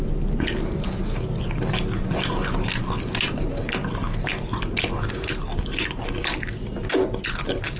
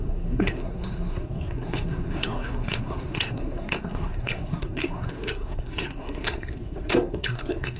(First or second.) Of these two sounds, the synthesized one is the second